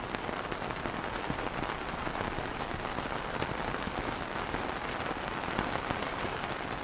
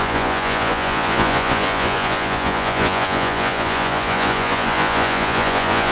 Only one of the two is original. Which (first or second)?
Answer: first